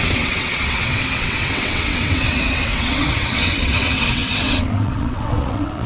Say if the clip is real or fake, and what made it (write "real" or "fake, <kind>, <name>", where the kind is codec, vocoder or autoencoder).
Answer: fake, vocoder, WaveNeXt